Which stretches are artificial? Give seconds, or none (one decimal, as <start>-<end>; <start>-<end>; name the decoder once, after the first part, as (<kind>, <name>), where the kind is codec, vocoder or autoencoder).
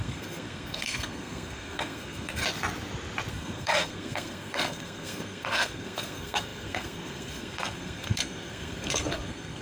0.0-2.4 (codec, SNAC); 3.3-9.6